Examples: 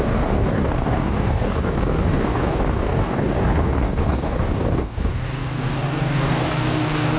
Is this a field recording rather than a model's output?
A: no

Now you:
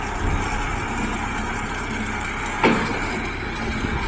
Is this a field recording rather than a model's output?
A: yes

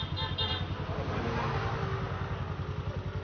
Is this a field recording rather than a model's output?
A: yes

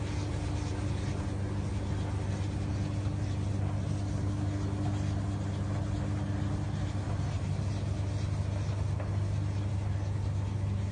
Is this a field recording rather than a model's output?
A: yes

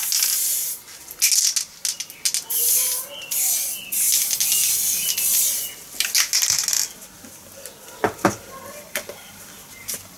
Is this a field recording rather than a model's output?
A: yes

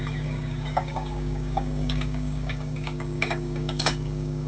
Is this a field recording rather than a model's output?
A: no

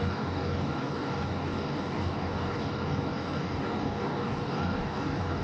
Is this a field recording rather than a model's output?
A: no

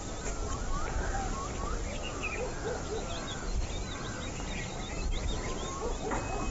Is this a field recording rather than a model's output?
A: yes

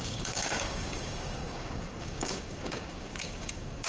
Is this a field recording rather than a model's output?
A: no